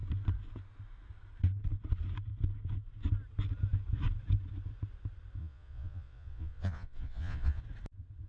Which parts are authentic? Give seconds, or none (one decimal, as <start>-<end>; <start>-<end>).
0.0-5.4; 7.6-8.3